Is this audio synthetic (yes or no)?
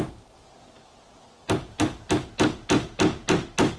no